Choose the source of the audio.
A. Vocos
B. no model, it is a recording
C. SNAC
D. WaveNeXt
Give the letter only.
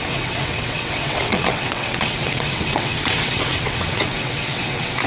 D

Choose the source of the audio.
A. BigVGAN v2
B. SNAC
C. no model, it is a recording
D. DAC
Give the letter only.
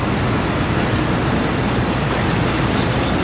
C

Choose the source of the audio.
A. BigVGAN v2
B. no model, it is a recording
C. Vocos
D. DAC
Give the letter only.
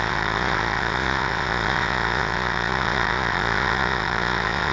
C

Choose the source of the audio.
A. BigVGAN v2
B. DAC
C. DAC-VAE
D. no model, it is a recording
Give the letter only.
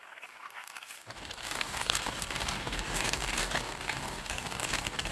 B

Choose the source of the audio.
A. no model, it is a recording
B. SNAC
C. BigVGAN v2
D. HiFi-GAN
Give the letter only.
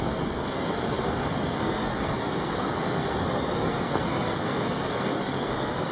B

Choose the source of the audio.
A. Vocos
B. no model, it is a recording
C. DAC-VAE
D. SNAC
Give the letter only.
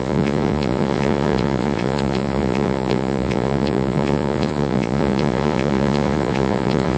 A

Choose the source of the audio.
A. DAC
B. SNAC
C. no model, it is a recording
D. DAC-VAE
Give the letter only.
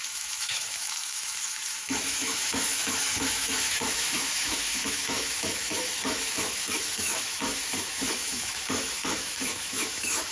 D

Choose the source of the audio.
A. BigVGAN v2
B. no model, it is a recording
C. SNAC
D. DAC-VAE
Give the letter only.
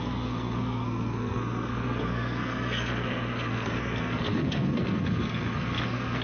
C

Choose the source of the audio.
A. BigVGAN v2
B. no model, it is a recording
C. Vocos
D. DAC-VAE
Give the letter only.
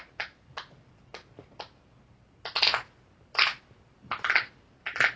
B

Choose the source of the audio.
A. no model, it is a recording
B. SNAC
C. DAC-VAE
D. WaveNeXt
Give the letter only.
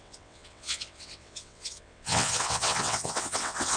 D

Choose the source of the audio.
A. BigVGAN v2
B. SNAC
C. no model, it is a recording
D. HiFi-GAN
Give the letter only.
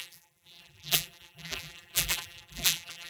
A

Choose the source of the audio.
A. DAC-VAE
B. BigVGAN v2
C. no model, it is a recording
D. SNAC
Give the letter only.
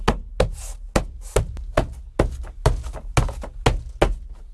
C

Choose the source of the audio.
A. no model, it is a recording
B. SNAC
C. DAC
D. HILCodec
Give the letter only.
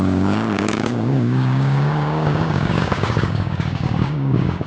C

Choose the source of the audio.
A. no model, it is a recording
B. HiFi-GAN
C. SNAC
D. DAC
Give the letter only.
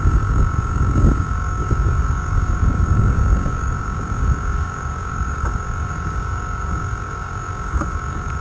D